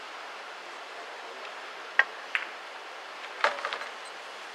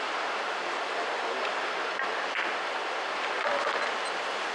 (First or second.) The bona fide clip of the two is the second